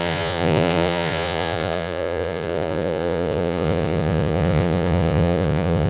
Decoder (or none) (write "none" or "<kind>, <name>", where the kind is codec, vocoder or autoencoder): vocoder, Vocos